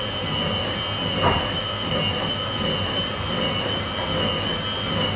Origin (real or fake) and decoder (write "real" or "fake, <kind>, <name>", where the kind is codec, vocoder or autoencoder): real